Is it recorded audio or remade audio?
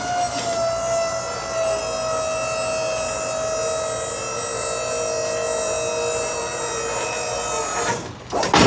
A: recorded